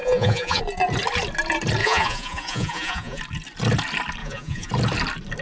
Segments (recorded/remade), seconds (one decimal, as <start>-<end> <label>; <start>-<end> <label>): 0.0-0.6 remade; 0.6-1.8 recorded; 1.8-3.2 remade; 3.2-4.2 recorded; 4.2-4.7 remade; 4.7-5.4 recorded